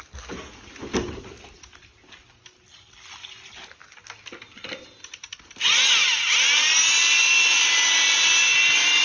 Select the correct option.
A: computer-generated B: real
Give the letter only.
B